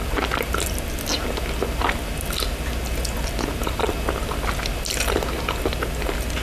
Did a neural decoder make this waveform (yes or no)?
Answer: no